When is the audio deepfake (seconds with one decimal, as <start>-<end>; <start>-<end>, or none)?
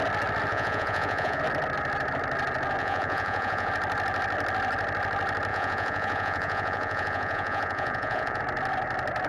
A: 0.5-1.4; 2.8-3.7; 5.5-8.4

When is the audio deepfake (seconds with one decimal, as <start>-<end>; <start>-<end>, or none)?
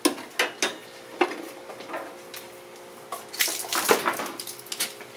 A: 0.8-1.7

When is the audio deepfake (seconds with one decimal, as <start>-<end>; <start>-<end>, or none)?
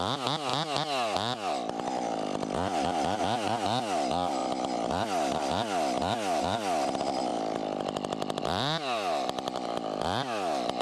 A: none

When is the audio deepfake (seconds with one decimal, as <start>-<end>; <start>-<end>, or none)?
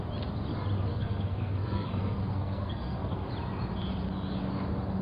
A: 0.9-3.3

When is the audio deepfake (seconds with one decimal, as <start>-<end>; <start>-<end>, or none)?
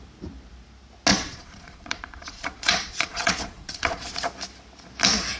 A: 1.1-4.3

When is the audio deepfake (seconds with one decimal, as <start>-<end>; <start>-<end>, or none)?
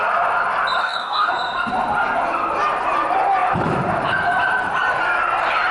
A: 0.8-1.3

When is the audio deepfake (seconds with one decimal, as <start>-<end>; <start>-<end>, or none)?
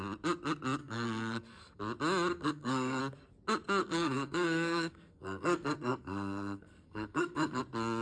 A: 0.8-1.8; 2.3-3.0; 3.8-7.6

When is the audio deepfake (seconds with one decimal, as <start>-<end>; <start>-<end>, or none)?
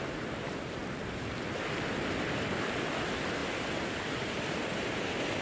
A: 3.4-4.9